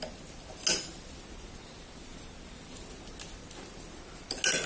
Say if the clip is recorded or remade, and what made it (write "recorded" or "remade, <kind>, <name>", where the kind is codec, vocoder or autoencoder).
recorded